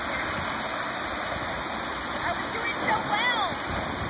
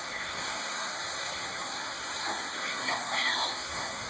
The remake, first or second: second